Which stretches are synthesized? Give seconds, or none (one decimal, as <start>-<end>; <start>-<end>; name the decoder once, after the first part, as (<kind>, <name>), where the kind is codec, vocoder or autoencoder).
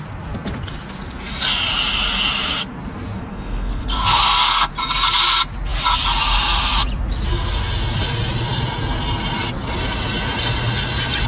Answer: 3.3-4.7 (codec, SNAC)